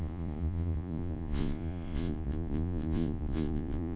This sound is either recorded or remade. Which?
remade